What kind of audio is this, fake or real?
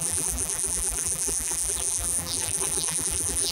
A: fake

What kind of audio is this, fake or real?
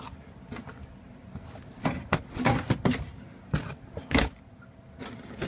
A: real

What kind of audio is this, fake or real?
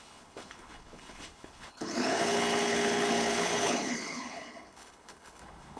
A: fake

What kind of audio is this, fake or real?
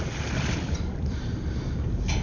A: real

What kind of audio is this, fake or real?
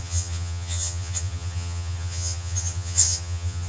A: fake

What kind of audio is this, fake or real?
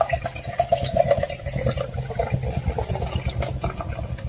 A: real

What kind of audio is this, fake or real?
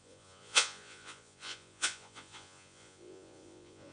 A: fake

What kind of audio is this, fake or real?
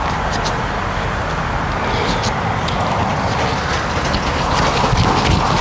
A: real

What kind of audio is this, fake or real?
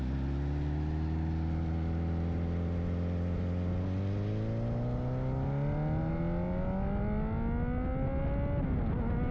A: real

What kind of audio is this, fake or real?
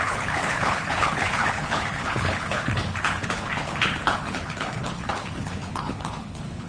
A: fake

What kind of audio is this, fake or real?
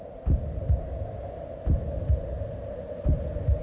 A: real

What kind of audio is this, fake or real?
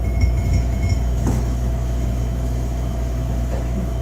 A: fake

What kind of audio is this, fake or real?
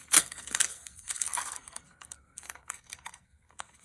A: fake